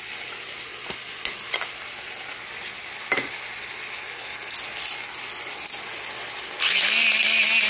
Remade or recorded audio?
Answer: recorded